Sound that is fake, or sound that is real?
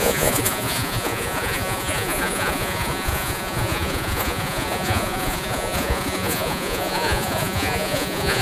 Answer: fake